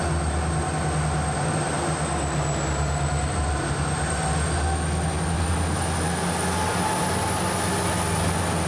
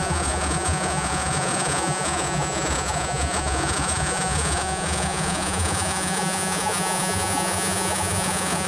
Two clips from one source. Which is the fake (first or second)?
second